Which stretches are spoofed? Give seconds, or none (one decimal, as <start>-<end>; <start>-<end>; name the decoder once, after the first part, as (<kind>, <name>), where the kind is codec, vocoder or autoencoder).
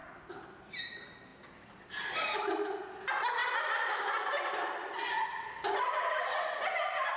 none